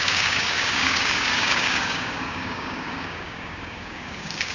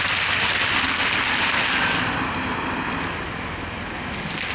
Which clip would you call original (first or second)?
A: second